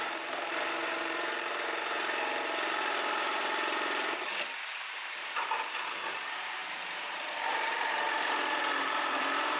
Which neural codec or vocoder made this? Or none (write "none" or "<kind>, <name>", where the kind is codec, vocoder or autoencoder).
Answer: vocoder, BigVGAN v2